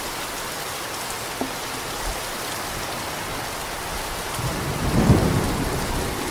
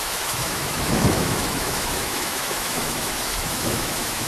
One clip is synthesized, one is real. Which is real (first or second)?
first